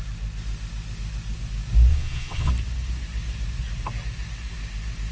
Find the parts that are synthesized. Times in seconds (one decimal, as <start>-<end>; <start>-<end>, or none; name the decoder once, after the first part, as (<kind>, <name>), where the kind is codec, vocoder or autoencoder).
1.9-2.5 (vocoder, Vocos)